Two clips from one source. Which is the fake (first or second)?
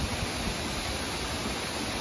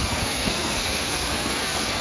second